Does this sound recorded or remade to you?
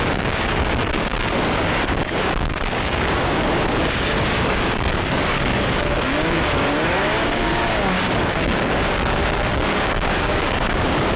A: remade